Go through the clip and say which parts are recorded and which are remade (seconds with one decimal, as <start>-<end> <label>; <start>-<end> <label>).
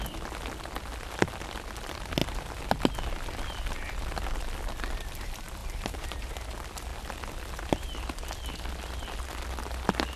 0.0-5.6 recorded; 5.6-6.3 remade; 6.3-10.2 recorded